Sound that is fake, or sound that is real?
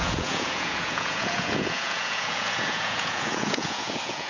fake